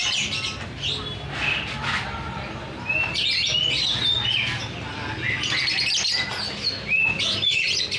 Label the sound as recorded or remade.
recorded